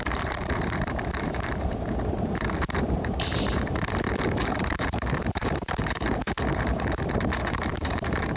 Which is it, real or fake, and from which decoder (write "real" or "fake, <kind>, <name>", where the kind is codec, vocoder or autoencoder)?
fake, vocoder, BigVGAN v2